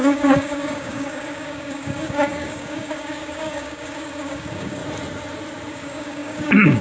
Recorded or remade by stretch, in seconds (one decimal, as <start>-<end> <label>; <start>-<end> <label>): 0.0-4.8 remade; 4.8-5.7 recorded; 5.7-6.8 remade